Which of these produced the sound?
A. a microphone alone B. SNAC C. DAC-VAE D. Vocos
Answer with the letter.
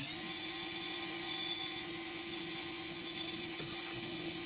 D